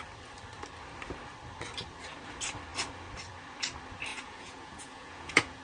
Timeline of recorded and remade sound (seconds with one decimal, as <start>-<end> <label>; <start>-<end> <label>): 0.0-4.1 recorded; 4.1-5.6 remade